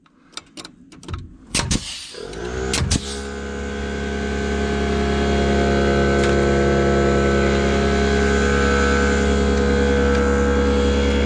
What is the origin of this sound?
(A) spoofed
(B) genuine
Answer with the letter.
B